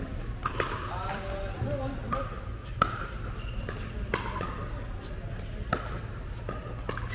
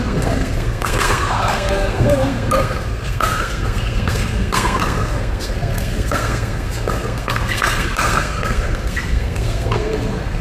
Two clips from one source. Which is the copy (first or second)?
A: second